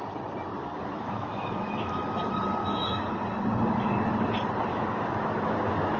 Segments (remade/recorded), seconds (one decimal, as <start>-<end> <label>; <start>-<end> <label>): 0.0-0.6 recorded; 0.6-2.2 remade; 2.2-2.6 recorded; 2.6-3.2 remade; 3.2-4.7 recorded; 4.7-6.0 remade